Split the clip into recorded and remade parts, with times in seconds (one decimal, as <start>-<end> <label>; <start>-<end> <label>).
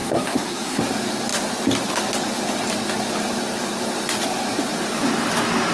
0.0-0.8 remade; 0.8-5.7 recorded